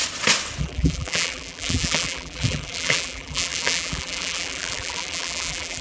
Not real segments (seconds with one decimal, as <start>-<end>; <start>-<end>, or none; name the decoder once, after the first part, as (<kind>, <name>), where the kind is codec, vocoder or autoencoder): 0.6-5.8 (vocoder, BigVGAN v2)